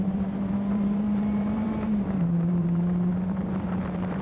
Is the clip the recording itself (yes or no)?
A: no